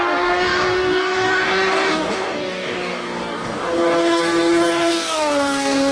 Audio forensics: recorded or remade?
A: remade